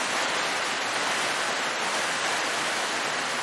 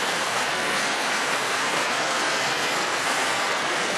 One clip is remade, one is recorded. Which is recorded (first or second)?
first